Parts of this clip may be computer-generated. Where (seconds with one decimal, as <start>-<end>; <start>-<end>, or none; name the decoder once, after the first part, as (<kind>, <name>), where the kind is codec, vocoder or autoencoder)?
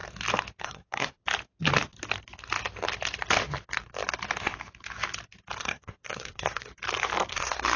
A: 0.6-1.2 (codec, SNAC); 5.6-6.7; 7.3-7.8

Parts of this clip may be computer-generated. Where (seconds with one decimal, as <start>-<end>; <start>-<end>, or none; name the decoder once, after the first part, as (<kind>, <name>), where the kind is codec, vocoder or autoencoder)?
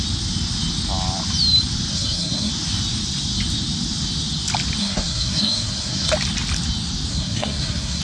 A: 1.9-2.5 (codec, SNAC); 4.8-6.1; 7.1-8.0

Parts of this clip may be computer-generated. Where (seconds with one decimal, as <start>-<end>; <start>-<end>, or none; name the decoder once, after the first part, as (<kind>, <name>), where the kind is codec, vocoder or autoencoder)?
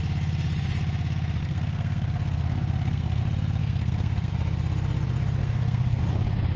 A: 1.4-3.2 (codec, SNAC); 3.6-4.3; 5.4-6.0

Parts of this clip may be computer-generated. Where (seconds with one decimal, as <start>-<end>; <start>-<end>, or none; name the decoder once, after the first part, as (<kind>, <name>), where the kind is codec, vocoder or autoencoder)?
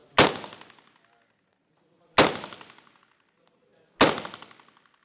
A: none